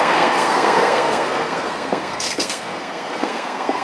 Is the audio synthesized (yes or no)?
yes